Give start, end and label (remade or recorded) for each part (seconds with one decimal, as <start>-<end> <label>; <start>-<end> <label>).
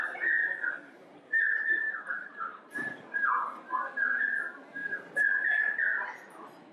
0.0-0.4 recorded; 0.4-3.3 remade; 3.3-4.8 recorded; 4.8-5.3 remade; 5.3-6.7 recorded